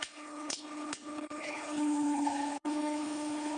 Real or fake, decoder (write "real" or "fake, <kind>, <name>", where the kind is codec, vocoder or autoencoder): fake, codec, HILCodec